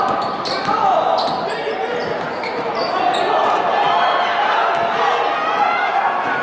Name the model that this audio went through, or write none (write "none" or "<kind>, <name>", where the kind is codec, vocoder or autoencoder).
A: none